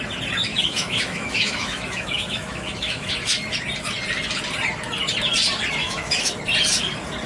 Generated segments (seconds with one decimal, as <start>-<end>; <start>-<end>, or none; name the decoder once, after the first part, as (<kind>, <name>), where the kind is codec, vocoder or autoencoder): 0.5-3.1 (autoencoder, DAC-VAE); 5.8-6.3